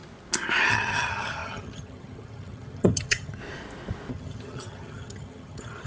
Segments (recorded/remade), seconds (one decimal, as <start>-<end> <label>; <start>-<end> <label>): 0.0-0.7 recorded; 0.7-3.4 remade; 3.4-4.1 recorded; 4.1-5.9 remade